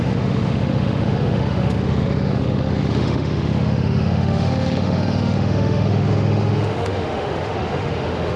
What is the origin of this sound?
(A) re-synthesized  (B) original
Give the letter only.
A